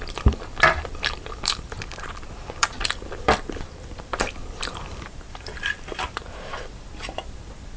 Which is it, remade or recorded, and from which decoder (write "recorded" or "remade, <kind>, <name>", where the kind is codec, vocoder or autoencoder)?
remade, vocoder, BigVGAN v2